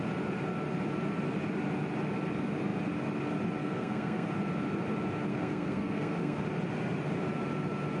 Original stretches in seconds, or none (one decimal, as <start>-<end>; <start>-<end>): 0.0-3.6; 4.3-5.3; 6.4-8.0